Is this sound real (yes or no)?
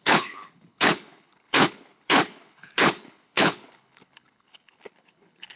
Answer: no